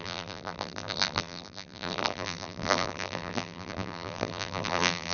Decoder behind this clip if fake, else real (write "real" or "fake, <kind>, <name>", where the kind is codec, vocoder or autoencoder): fake, vocoder, BigVGAN v2